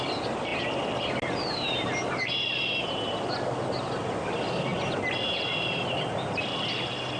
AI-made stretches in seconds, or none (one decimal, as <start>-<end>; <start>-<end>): none